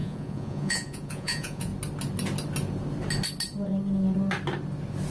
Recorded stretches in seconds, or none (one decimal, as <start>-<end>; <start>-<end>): 1.7-5.1